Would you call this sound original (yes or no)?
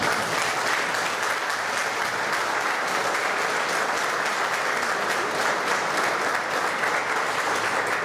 yes